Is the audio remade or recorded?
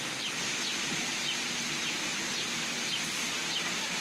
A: recorded